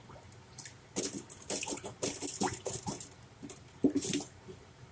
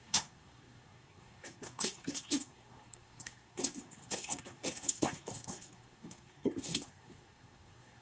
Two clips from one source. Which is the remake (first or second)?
second